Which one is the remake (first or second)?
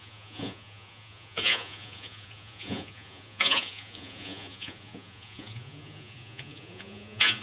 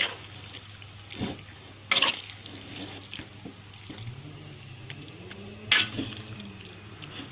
first